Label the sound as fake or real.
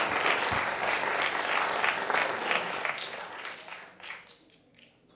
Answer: real